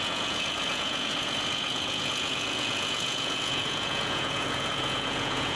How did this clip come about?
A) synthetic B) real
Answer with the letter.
A